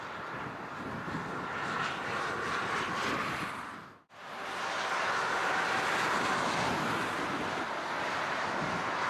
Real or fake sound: real